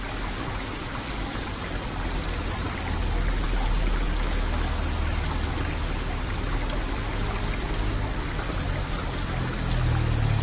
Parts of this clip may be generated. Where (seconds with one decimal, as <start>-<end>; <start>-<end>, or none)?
none